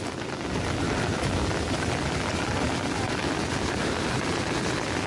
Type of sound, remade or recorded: recorded